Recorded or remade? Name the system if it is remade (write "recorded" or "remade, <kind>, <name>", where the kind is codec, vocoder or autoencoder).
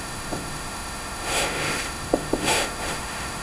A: remade, autoencoder, DAC-VAE